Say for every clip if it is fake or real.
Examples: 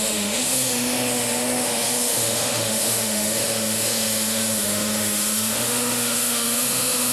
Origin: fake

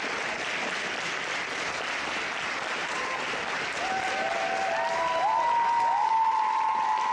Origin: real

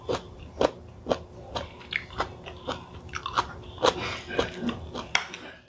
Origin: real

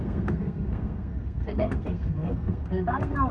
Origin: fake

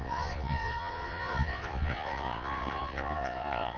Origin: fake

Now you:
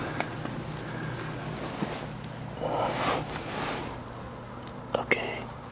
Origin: real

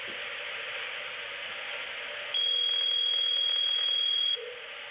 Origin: real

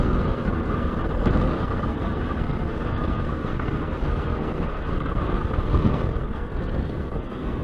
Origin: fake